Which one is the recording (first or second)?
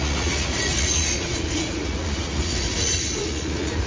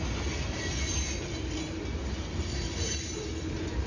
second